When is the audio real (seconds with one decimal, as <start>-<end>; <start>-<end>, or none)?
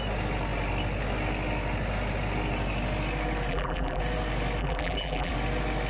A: 0.0-3.5; 4.0-4.6; 5.3-5.9